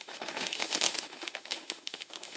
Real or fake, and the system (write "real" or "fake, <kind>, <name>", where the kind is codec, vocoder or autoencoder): fake, autoencoder, DAC-VAE